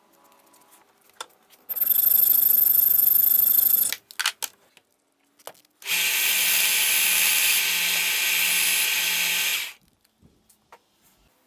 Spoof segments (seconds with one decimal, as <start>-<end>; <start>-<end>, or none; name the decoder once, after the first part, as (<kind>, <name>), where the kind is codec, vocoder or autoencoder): none